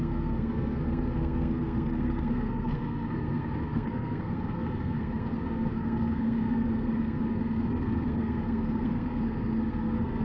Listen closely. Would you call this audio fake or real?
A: fake